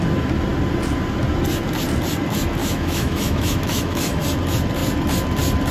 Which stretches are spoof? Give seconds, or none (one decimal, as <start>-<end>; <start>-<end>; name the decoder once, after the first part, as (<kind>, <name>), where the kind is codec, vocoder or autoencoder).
2.6-4.2 (autoencoder, DAC-VAE)